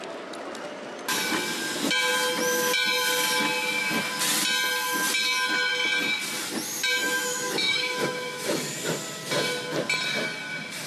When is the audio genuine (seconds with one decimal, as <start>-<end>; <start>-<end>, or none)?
0.0-7.0; 8.7-10.9

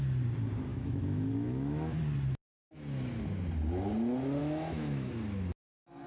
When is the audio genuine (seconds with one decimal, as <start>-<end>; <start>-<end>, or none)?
0.0-0.7; 2.0-4.4; 5.1-6.1

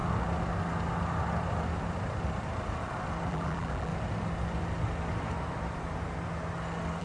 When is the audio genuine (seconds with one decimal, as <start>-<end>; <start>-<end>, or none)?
0.0-3.3; 3.9-7.0

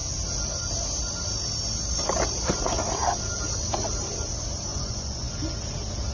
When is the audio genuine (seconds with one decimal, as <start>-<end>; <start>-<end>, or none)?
0.0-4.7; 5.3-6.1